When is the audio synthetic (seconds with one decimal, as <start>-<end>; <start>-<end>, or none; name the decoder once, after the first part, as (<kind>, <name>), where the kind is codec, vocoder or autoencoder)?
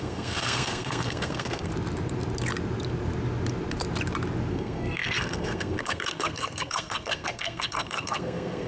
0.0-1.7 (codec, SNAC); 4.5-8.7